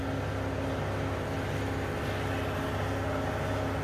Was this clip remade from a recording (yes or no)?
no